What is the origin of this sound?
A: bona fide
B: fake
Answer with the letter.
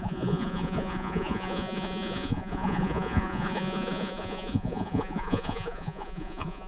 B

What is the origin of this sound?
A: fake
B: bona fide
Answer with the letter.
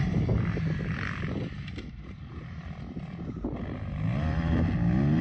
B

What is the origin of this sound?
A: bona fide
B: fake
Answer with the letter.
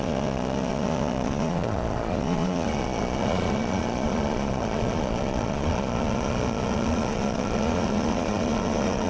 B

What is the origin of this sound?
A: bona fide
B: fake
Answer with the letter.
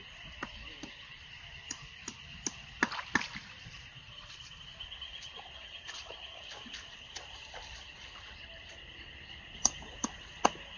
A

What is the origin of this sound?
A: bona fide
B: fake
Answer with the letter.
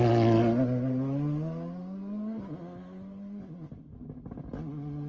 A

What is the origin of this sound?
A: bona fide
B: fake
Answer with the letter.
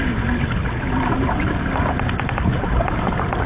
A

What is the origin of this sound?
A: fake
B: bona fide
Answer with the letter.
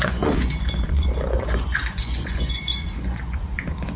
A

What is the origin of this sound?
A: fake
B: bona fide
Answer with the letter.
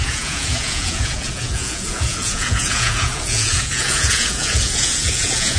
A